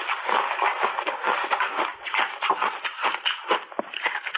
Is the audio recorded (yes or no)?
yes